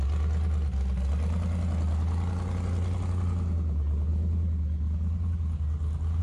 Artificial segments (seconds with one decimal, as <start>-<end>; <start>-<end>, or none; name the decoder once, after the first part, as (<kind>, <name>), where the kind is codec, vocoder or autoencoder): none